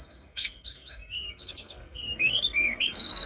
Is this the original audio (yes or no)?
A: no